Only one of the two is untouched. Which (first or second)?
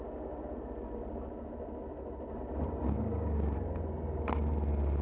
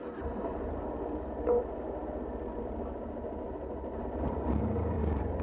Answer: first